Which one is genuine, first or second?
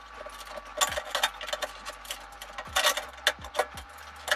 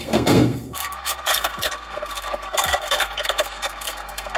first